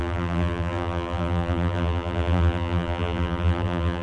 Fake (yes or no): yes